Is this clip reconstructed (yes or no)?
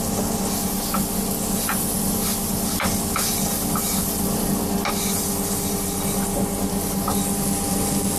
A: no